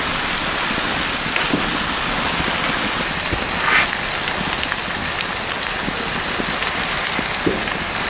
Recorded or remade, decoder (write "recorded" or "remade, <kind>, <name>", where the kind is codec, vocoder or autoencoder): recorded